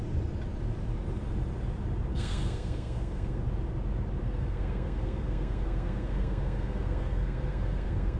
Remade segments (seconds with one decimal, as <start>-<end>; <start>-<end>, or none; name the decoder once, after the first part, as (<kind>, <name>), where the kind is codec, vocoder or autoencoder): 2.1-3.4 (codec, SNAC); 4.2-8.2